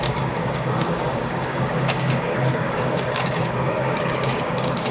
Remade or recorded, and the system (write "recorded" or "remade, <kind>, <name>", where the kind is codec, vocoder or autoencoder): remade, codec, DAC